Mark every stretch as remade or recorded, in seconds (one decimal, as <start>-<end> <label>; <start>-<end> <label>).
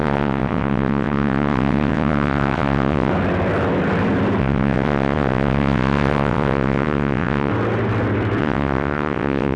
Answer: 0.0-3.1 remade; 3.1-4.4 recorded; 4.4-7.5 remade; 7.5-8.4 recorded; 8.4-9.6 remade